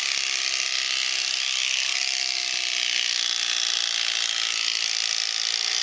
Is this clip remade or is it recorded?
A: recorded